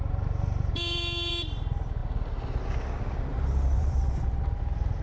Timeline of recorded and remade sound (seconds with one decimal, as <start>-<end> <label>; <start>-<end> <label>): 0.0-0.7 recorded; 0.7-1.3 remade; 1.3-3.3 recorded; 3.3-4.4 remade; 4.4-5.0 recorded

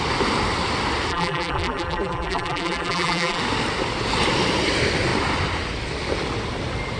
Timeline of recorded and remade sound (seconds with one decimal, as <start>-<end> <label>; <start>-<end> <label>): 0.0-1.1 recorded; 1.1-3.4 remade; 3.4-7.0 recorded

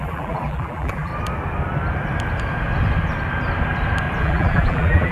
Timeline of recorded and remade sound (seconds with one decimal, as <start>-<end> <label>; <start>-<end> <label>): 0.0-1.1 remade; 1.1-4.2 recorded; 4.2-5.1 remade

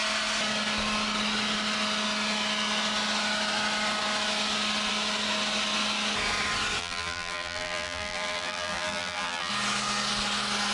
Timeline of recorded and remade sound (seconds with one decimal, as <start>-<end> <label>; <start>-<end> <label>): 0.0-6.8 recorded; 6.8-9.5 remade; 9.5-10.7 recorded